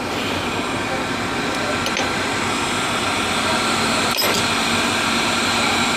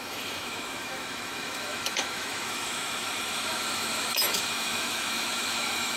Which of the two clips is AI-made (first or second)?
second